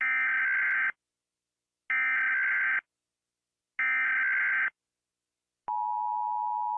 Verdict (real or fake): real